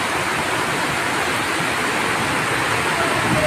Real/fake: real